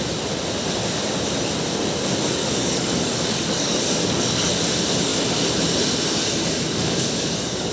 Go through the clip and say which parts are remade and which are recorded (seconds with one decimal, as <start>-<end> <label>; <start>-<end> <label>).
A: 0.0-2.4 recorded; 2.4-4.5 remade; 4.5-6.4 recorded; 6.4-7.7 remade